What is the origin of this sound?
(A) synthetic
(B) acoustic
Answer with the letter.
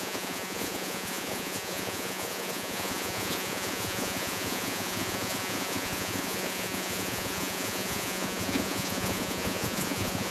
A